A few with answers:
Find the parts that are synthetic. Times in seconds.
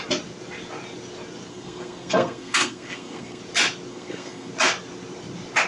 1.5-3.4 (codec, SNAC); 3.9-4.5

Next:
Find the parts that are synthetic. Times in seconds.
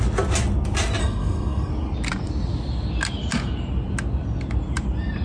1.0-1.7 (codec, SNAC)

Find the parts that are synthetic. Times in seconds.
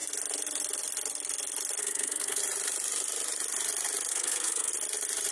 1.8-2.4 (codec, SNAC); 4.1-4.7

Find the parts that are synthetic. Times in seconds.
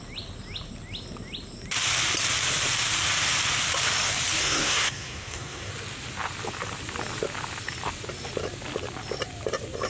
4.4-5.7 (codec, SNAC)